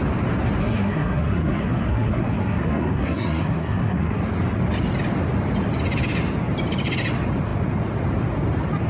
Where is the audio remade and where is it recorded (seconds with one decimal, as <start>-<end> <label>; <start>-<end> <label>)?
0.0-0.6 recorded; 0.6-4.2 remade; 4.2-8.9 recorded